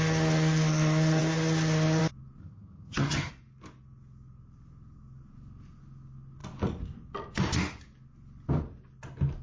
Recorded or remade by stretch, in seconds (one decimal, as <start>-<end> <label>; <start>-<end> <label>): 0.0-2.4 recorded; 2.4-3.3 remade; 3.3-9.4 recorded